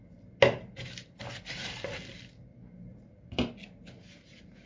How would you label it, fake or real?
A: real